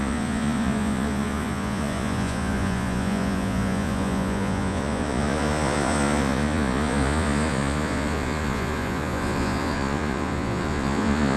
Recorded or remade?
remade